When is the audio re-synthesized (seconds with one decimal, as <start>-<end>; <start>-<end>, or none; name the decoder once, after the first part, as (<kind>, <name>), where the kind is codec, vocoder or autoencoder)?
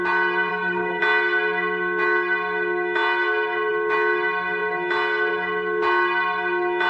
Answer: 0.5-1.0 (codec, SNAC)